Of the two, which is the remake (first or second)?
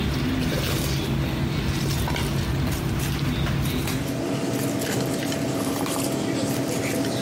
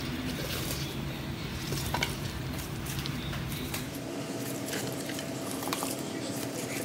second